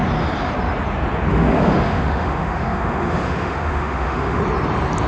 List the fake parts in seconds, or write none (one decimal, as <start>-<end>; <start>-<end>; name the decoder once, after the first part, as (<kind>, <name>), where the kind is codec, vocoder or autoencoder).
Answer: 1.3-4.4 (autoencoder, DAC-VAE)